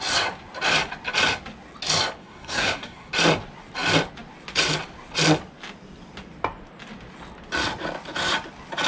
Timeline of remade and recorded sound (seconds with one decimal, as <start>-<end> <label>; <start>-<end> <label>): 0.0-2.2 recorded; 2.2-3.1 remade; 3.1-8.9 recorded